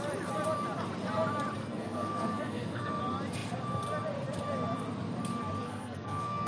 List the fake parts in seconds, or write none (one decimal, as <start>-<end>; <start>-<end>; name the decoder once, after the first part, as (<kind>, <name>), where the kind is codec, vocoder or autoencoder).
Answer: 1.6-3.0 (codec, SNAC); 5.6-6.5